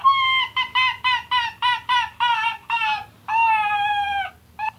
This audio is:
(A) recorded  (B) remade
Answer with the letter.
A